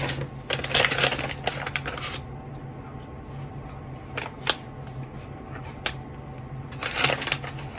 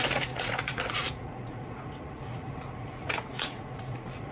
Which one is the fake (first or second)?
second